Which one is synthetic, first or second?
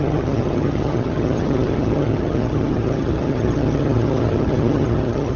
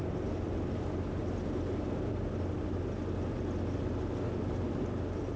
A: first